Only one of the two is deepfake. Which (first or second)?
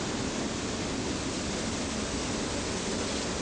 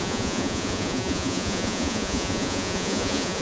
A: second